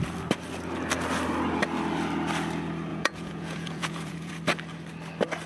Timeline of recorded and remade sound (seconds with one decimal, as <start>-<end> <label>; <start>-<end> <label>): 0.0-2.9 recorded; 2.9-4.3 remade; 4.3-5.5 recorded